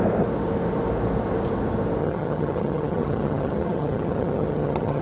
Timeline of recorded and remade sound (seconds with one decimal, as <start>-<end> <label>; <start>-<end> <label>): 0.0-2.0 recorded; 2.0-5.0 remade

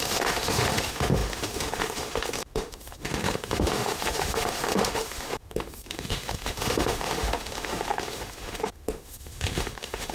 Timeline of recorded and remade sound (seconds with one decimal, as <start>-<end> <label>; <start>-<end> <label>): 0.0-10.1 remade

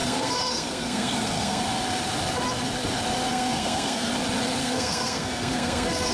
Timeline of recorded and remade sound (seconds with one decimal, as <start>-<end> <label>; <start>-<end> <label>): 0.0-1.6 remade; 1.6-3.3 recorded; 3.3-4.1 remade; 4.1-4.6 recorded; 4.6-6.1 remade

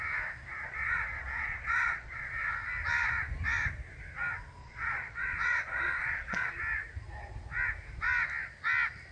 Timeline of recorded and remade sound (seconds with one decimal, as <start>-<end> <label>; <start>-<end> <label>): 0.0-0.5 recorded; 0.5-2.3 remade; 2.3-4.6 recorded; 4.6-6.5 remade; 6.5-9.1 recorded